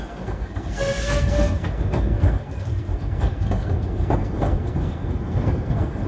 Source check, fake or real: fake